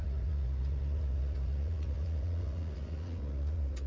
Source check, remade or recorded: remade